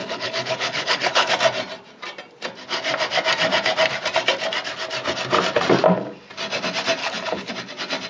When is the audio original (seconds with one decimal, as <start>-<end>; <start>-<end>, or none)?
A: 1.3-7.0; 7.5-8.1